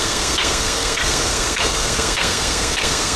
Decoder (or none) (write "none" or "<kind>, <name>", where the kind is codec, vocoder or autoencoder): codec, SNAC